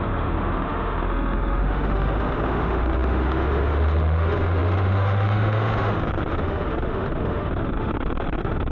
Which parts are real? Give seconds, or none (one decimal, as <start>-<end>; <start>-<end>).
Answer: none